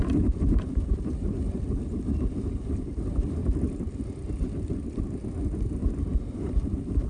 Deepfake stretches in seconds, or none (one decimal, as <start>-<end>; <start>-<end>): 0.0-3.4; 5.8-7.1